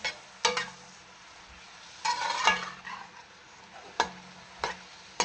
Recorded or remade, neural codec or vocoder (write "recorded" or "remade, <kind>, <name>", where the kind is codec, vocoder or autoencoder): recorded